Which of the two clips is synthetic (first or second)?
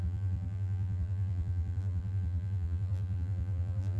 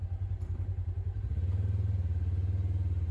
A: first